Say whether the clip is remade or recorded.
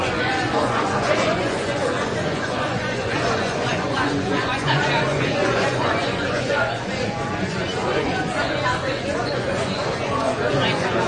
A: remade